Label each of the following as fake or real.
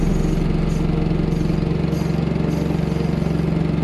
real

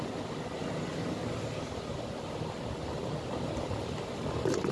real